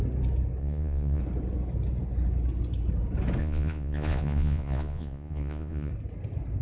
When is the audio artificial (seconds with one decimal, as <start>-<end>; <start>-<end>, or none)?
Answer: 0.6-1.2; 3.4-5.9